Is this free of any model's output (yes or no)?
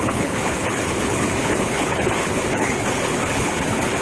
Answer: no